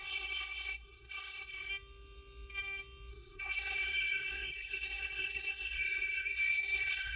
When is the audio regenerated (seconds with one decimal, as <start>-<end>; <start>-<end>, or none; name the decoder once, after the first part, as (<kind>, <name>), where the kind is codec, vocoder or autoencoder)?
0.0-1.7 (codec, SNAC); 3.1-7.2